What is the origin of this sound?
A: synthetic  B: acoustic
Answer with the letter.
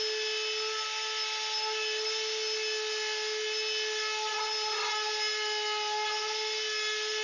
B